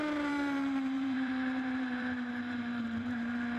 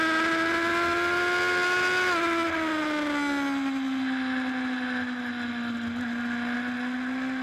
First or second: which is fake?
first